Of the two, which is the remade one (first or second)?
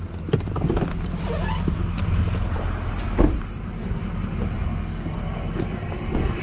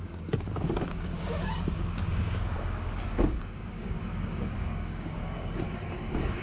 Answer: second